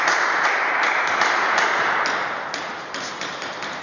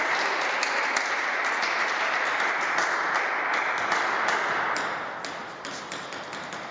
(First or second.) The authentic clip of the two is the second